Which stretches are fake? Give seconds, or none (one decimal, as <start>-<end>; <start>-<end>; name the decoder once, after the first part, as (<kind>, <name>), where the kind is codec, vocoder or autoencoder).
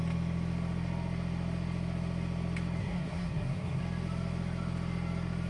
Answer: 2.8-3.8 (codec, SNAC)